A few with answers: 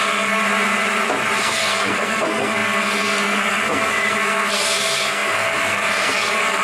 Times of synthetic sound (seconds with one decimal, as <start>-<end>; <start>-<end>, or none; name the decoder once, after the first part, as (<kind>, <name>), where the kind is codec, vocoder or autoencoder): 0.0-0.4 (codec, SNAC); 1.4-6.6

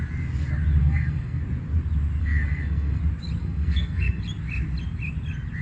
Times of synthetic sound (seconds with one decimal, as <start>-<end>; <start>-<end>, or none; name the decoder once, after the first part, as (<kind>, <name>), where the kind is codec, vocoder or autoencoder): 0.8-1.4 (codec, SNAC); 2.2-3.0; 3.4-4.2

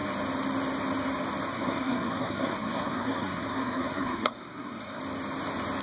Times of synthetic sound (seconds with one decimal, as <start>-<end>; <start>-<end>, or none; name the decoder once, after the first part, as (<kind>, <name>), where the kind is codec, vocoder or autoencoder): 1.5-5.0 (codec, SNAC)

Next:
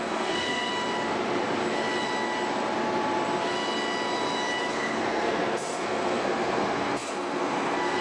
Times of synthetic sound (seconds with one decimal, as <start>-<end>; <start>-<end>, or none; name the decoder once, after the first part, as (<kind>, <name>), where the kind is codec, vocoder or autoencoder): 0.0-0.7 (codec, SNAC); 4.6-8.0

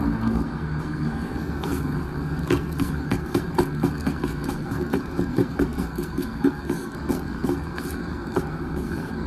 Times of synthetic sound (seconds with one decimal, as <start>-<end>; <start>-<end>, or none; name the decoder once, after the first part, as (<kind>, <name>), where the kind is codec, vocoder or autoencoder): 0.0-9.3 (codec, SNAC)